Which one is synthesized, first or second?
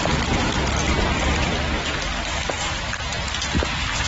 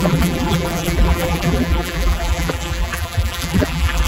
second